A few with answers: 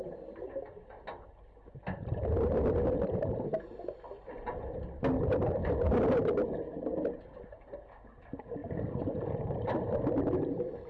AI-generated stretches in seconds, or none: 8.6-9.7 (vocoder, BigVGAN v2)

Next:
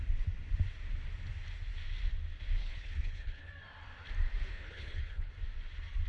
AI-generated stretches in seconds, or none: 2.6-3.5 (codec, HILCodec); 4.5-5.3

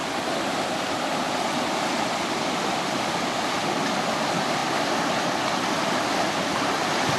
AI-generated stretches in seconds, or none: none

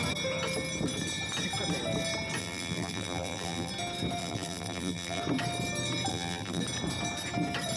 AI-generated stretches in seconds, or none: 2.4-3.7 (vocoder, BigVGAN v2); 4.2-5.2; 6.1-6.6

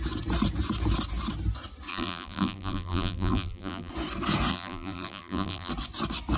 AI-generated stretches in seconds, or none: 1.9-3.9 (vocoder, BigVGAN v2); 4.5-5.7

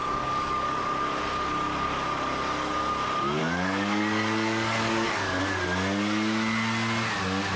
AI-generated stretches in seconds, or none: 0.0-0.8 (codec, DAC); 3.4-5.4

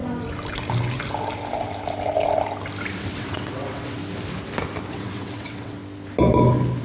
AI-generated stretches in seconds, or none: 3.0-4.0 (vocoder, WaveNeXt); 4.9-5.8

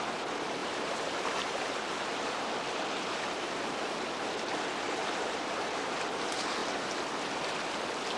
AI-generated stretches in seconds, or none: 0.6-2.6 (vocoder, BigVGAN v2); 5.0-5.9